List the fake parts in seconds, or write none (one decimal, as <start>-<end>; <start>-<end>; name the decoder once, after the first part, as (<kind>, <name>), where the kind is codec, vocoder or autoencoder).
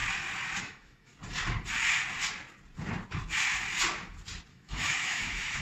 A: 0.6-1.1 (autoencoder, DAC-VAE); 4.5-5.6